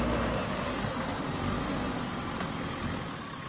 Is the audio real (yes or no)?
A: yes